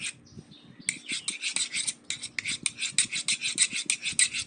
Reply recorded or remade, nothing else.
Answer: recorded